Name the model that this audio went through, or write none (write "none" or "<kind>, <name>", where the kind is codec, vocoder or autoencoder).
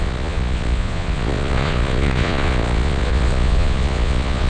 vocoder, Vocos